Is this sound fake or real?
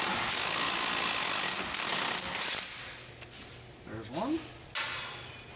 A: real